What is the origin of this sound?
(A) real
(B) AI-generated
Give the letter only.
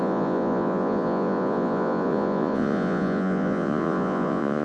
B